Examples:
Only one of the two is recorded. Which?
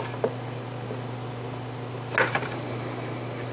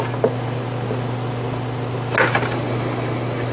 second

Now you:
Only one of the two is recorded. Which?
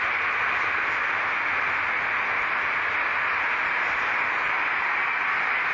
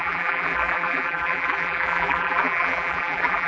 first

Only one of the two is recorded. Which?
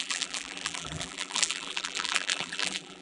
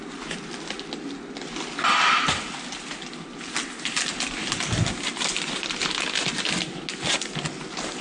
second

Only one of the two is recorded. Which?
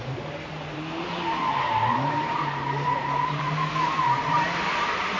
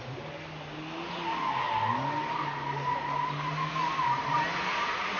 second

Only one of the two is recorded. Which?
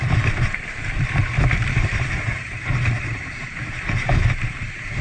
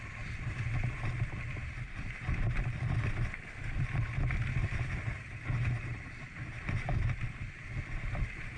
second